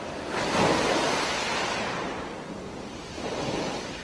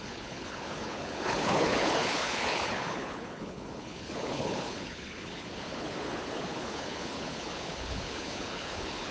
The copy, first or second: second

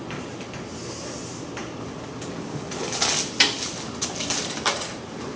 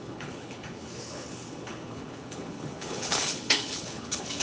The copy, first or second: second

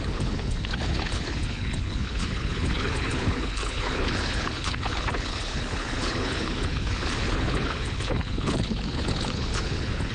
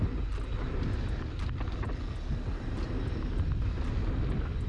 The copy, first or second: first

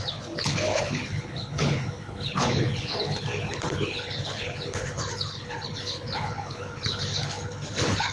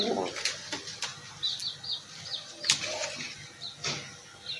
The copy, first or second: first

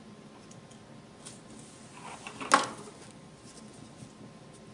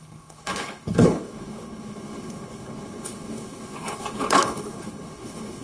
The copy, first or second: second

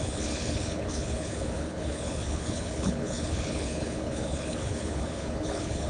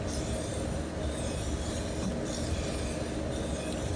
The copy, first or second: first